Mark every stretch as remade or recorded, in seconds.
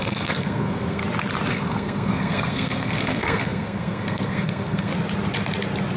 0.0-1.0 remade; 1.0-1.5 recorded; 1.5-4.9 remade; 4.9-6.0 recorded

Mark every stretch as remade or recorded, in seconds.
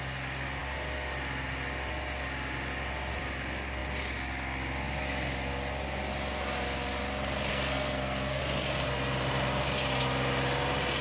0.0-7.5 recorded; 7.5-8.4 remade; 8.4-11.0 recorded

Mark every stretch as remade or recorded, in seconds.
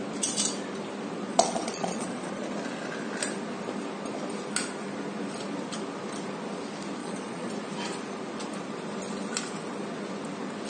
0.0-1.3 recorded; 1.3-2.3 remade; 2.3-7.0 recorded; 7.0-7.5 remade; 7.5-10.7 recorded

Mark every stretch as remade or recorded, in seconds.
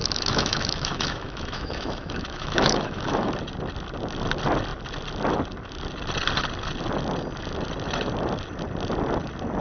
0.0-3.3 remade; 3.3-9.6 recorded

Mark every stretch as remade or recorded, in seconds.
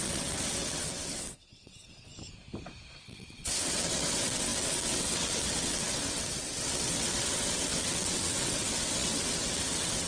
0.0-2.1 remade; 2.1-3.0 recorded; 3.0-10.1 remade